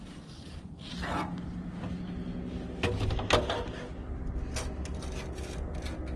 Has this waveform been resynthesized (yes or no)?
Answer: no